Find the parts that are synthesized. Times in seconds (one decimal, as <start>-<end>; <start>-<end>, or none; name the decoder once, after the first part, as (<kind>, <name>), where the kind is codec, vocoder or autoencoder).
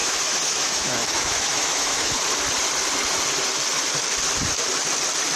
0.0-2.2 (autoencoder, DAC-VAE)